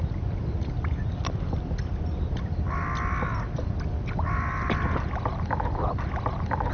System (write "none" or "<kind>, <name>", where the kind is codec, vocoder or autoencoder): none